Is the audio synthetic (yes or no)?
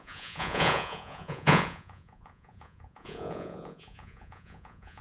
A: yes